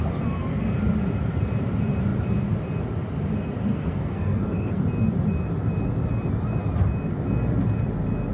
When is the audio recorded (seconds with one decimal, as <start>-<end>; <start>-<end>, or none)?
0.0-3.7; 4.8-8.3